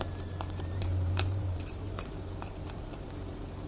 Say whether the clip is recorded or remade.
remade